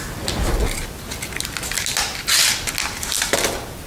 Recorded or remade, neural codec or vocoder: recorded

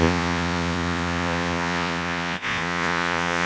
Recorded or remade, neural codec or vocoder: remade, vocoder, Vocos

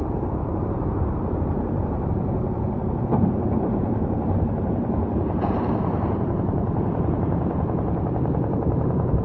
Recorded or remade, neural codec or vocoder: remade, vocoder, BigVGAN v2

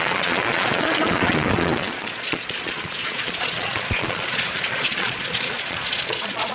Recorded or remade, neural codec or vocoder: remade, vocoder, Vocos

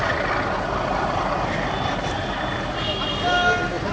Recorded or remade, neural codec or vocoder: recorded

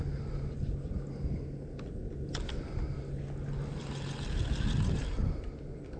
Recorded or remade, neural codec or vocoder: recorded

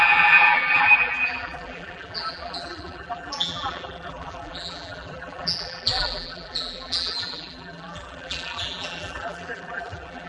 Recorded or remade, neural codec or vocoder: remade, vocoder, BigVGAN v2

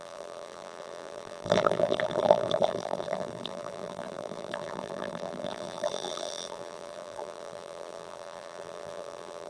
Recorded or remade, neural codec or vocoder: remade, vocoder, BigVGAN v2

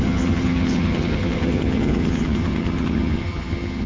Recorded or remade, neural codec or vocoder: remade, vocoder, HiFi-GAN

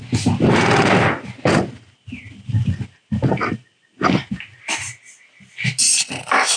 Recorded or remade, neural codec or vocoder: recorded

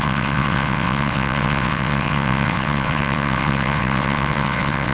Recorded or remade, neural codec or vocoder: remade, vocoder, WaveNeXt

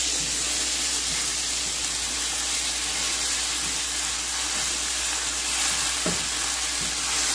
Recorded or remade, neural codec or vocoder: recorded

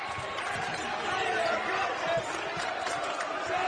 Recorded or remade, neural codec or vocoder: remade, vocoder, BigVGAN v2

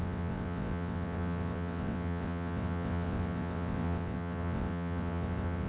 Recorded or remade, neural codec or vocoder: remade, vocoder, WaveNeXt